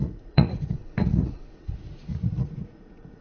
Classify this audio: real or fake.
fake